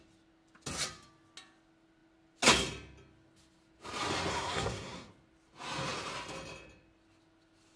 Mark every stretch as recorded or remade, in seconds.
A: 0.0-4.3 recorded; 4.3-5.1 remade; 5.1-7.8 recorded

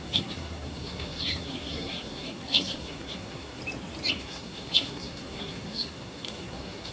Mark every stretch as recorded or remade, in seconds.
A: 0.0-3.6 remade; 3.6-4.1 recorded; 4.1-6.9 remade